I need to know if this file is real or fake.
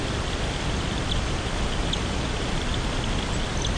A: real